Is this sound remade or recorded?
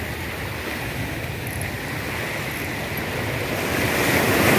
recorded